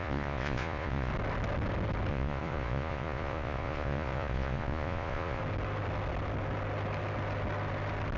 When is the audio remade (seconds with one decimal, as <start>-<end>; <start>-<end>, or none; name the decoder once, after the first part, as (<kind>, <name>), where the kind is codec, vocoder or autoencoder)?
0.0-1.1 (vocoder, Vocos); 2.1-5.4